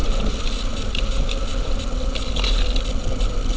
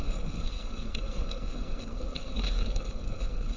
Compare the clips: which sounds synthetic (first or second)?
second